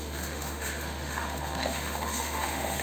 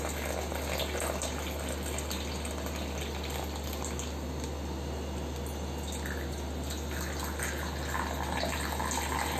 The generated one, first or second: first